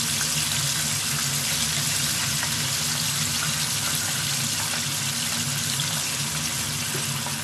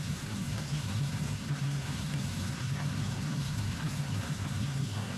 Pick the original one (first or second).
first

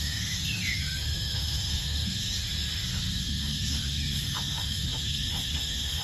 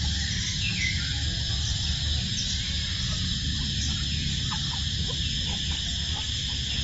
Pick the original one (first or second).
second